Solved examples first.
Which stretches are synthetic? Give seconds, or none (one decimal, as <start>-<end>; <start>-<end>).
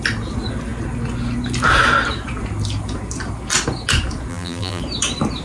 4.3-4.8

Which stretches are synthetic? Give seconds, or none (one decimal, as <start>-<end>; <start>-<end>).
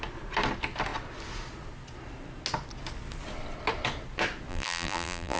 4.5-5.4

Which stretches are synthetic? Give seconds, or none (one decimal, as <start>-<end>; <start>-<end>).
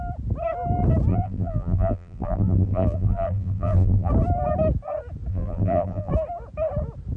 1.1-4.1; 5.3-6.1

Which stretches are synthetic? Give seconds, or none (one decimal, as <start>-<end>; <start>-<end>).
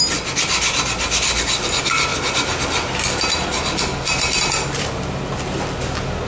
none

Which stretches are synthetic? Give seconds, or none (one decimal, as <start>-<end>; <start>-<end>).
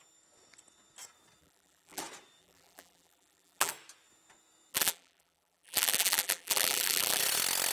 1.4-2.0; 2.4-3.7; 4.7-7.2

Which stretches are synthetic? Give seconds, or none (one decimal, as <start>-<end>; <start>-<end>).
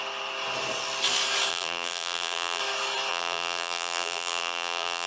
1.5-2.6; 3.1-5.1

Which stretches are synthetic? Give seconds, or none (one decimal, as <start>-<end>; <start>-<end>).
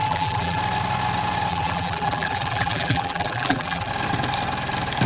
0.0-0.6; 1.5-3.9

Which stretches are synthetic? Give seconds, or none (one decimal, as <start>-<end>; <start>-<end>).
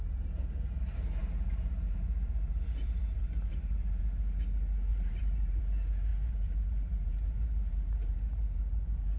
1.2-4.0; 4.9-5.6; 6.1-9.2